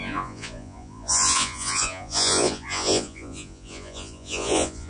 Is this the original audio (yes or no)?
no